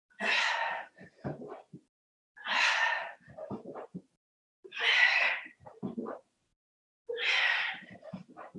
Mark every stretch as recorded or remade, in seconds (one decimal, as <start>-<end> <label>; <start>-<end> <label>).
0.0-6.5 remade; 6.5-7.4 recorded; 7.4-8.6 remade